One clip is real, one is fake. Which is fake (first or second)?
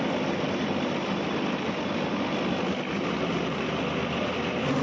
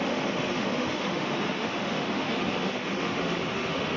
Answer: second